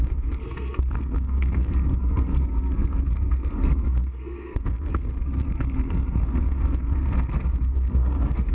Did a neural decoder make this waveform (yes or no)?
yes